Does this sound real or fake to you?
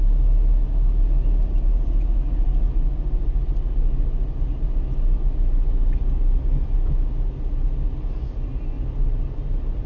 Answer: real